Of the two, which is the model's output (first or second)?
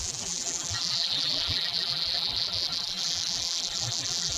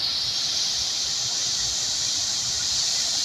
first